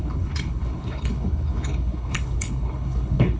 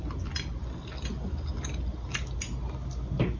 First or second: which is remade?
first